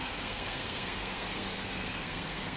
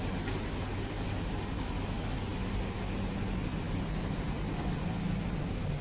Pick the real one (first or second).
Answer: second